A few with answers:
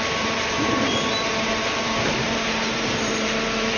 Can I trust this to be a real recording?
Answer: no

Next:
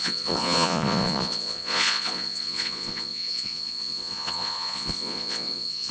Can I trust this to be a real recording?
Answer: no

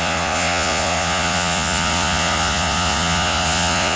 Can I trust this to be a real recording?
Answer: no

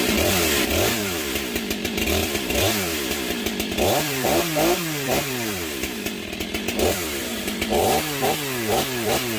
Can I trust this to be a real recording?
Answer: no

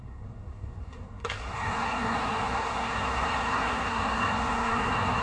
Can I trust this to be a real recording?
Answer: no